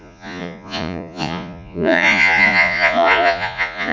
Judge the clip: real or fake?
fake